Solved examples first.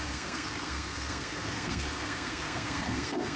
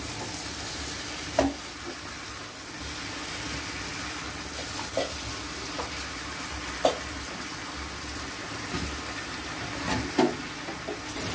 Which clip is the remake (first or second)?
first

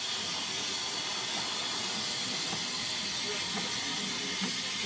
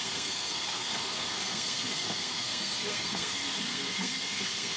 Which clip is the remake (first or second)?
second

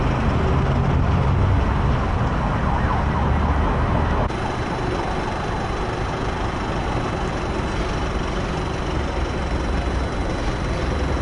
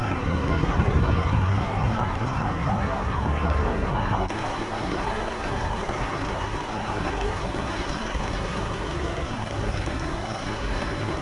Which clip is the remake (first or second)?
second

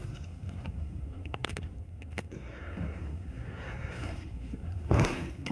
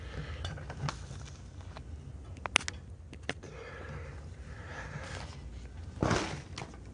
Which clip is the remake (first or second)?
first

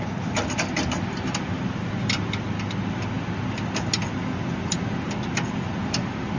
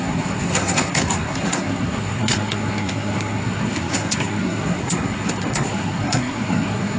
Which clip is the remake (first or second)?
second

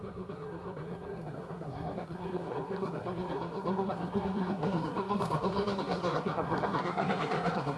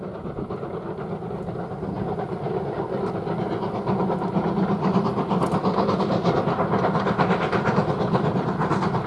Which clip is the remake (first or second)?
first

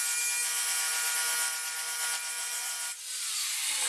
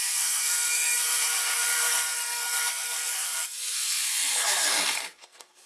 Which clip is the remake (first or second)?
second